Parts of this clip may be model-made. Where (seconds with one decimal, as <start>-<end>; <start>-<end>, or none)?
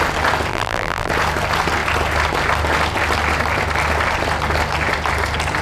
0.5-1.1